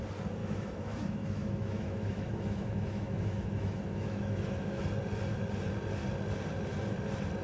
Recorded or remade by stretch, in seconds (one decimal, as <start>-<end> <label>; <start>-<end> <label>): 0.0-0.4 recorded; 0.4-4.8 remade; 4.8-7.4 recorded

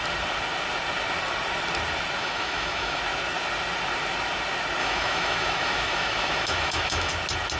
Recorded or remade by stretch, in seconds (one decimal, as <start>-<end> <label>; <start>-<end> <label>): 0.0-2.2 recorded; 2.2-3.0 remade; 3.0-4.8 recorded; 4.8-7.1 remade; 7.1-7.6 recorded

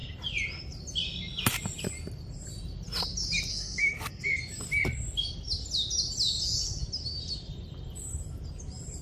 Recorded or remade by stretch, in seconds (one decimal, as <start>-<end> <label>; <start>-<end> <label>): 0.0-3.5 recorded; 3.5-4.4 remade; 4.4-9.0 recorded

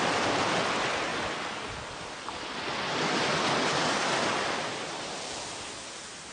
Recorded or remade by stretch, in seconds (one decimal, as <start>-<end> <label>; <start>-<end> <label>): 0.0-6.3 recorded